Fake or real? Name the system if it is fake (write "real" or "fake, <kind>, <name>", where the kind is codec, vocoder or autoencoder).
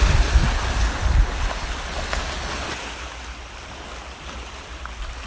real